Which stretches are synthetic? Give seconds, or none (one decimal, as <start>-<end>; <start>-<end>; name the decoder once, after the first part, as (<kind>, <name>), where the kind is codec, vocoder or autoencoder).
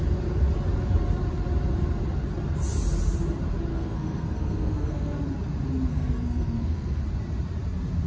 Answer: 3.7-5.2 (codec, SNAC); 5.9-7.0